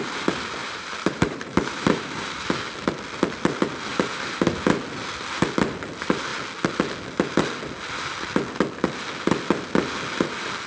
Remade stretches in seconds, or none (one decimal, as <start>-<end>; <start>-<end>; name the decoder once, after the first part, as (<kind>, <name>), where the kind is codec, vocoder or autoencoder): 0.6-2.5 (vocoder, BigVGAN v2); 3.9-4.5